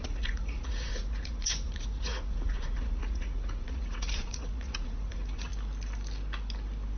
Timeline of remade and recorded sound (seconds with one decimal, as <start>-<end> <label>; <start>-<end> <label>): 0.0-5.5 remade; 5.5-7.0 recorded